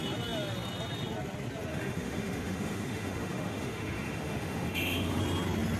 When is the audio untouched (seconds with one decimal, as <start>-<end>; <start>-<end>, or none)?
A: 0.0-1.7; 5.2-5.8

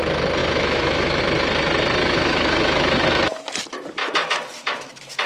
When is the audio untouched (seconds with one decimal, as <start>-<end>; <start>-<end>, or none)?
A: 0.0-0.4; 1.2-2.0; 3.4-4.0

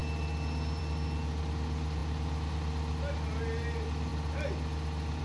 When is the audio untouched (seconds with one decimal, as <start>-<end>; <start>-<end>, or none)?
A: 0.0-5.2

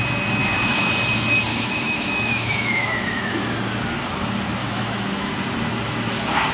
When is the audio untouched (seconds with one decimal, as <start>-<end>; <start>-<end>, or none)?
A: 0.0-0.4; 0.9-1.5; 3.5-4.6; 5.3-6.5